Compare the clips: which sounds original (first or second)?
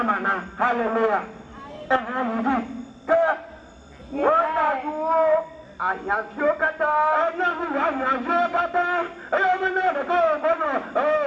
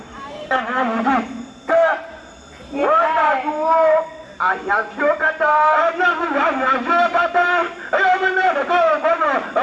first